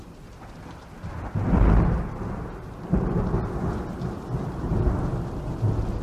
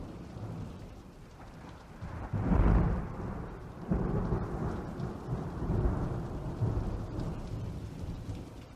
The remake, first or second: second